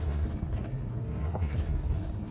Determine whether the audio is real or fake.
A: fake